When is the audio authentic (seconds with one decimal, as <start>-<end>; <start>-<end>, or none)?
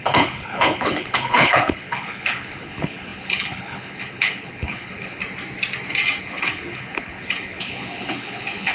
5.2-6.2